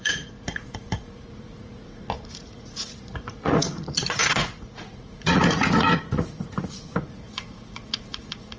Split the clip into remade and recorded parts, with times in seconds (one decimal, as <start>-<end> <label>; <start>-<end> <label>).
0.0-8.6 remade